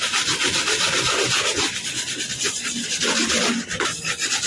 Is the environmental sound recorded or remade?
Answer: recorded